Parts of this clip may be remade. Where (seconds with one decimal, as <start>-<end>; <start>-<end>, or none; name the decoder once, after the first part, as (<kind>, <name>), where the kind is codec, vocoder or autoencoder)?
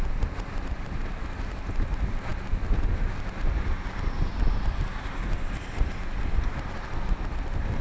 none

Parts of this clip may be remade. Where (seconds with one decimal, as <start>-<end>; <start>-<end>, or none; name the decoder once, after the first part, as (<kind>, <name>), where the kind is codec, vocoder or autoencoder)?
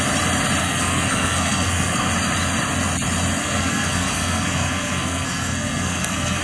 0.6-2.1 (codec, SNAC); 3.4-6.4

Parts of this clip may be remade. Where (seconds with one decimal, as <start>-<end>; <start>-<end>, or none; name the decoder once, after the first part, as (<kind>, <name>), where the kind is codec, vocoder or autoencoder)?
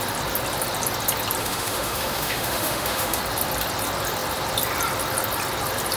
1.4-3.2 (autoencoder, DAC-VAE)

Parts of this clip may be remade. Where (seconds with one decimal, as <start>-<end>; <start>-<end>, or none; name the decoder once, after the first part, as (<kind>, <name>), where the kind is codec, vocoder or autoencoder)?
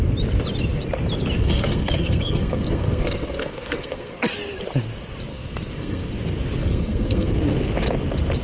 1.4-4.2 (codec, SNAC); 5.3-6.1; 6.6-7.3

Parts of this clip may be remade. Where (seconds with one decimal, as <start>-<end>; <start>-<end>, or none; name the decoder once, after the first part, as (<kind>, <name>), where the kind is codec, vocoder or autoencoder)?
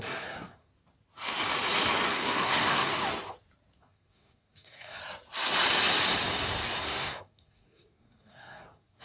0.0-0.7 (codec, SNAC); 2.1-2.9; 3.8-5.0; 6.8-9.0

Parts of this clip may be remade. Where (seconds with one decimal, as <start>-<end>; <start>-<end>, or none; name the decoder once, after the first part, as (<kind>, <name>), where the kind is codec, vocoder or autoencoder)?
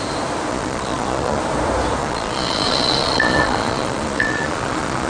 0.5-1.4 (vocoder, Vocos); 2.0-5.1